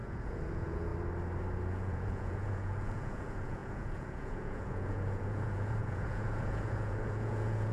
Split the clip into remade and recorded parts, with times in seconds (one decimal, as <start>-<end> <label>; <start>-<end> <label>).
0.0-0.9 remade; 0.9-1.7 recorded; 1.7-7.7 remade